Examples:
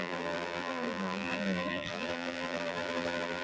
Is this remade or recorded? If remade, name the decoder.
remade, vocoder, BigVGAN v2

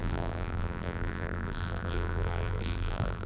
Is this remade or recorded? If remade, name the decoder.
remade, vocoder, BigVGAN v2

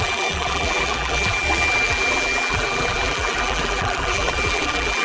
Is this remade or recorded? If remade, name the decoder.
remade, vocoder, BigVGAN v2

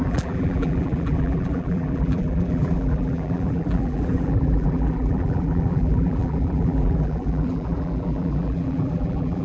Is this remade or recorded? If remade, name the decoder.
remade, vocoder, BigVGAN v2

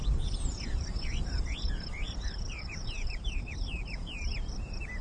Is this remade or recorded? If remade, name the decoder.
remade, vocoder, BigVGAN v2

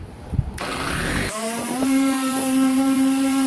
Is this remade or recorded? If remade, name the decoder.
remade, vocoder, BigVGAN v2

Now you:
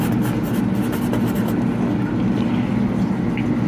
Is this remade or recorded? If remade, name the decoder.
recorded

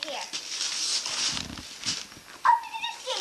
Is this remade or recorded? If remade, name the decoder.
recorded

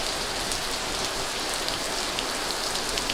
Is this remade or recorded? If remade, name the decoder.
recorded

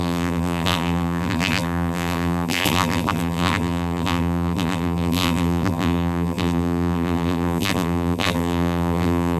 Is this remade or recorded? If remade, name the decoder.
remade, vocoder, BigVGAN v2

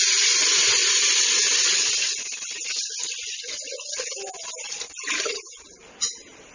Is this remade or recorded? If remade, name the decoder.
remade, vocoder, BigVGAN v2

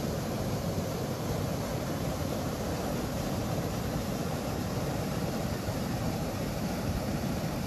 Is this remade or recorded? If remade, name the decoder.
remade, vocoder, BigVGAN v2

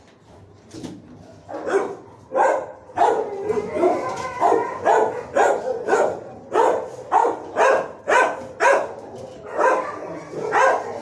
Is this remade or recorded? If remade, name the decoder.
recorded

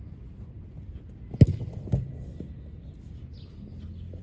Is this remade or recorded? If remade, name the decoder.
recorded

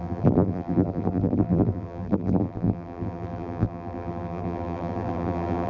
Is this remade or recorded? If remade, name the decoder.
remade, vocoder, BigVGAN v2